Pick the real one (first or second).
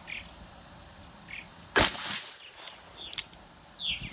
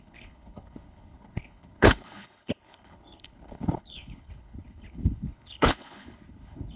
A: first